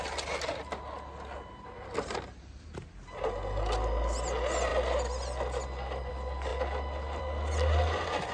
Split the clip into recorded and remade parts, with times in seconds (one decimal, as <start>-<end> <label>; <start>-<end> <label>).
0.0-8.3 recorded